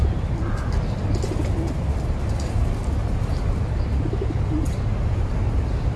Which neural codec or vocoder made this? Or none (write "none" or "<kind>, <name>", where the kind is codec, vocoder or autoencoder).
none